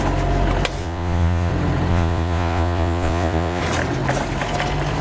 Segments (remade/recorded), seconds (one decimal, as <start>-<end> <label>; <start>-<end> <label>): 0.0-0.8 recorded; 0.8-1.5 remade; 1.5-1.9 recorded; 1.9-3.6 remade; 3.6-5.0 recorded

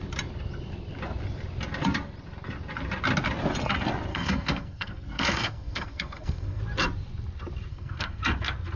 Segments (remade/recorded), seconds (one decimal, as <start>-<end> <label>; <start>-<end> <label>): 0.0-4.1 recorded; 4.1-6.6 remade; 6.6-7.7 recorded; 7.7-8.2 remade; 8.2-8.8 recorded